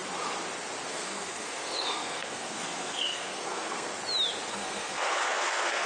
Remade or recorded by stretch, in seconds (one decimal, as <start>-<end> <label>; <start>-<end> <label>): 0.0-0.9 recorded; 0.9-3.9 remade; 3.9-4.5 recorded; 4.5-5.9 remade